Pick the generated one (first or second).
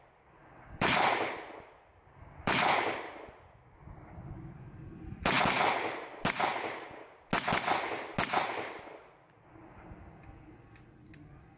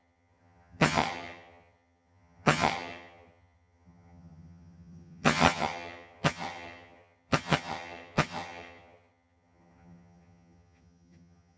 second